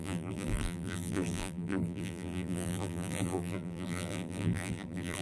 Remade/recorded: remade